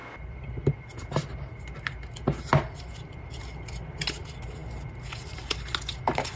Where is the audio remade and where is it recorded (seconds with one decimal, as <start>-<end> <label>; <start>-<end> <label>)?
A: 0.0-6.4 recorded